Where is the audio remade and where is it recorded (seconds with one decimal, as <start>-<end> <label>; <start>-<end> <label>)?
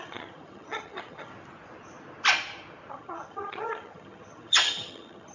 0.0-1.3 remade; 1.3-2.9 recorded; 2.9-5.3 remade